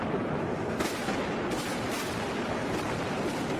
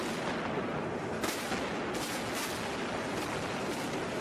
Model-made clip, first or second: first